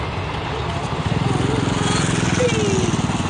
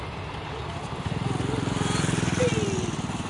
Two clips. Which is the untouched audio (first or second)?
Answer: first